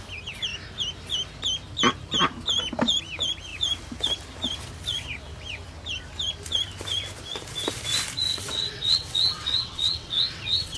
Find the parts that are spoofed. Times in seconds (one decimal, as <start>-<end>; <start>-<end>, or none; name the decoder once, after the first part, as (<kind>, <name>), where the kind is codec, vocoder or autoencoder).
8.3-10.8 (vocoder, WaveNeXt)